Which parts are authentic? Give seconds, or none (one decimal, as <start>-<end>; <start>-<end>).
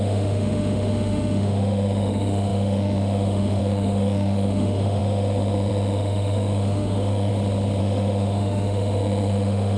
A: 7.3-7.8